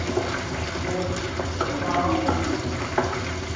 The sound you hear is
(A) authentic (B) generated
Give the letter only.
A